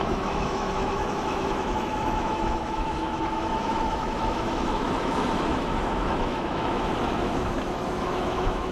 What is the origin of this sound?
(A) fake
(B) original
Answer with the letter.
A